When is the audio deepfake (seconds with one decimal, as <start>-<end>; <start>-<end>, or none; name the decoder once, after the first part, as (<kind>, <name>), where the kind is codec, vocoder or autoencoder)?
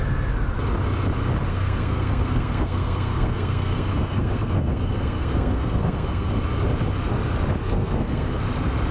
1.5-6.3 (codec, SNAC); 7.6-8.4